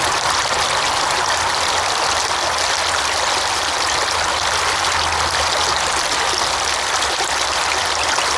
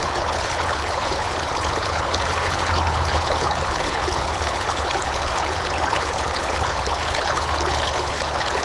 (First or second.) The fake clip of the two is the second